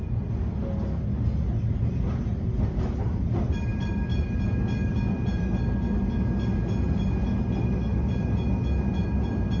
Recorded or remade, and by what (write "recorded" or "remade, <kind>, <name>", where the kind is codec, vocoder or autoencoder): recorded